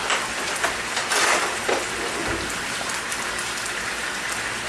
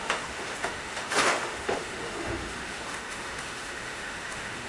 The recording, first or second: first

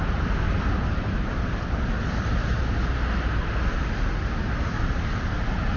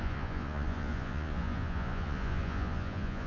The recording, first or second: first